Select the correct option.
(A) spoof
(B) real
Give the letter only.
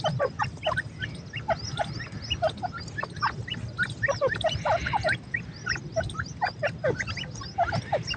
B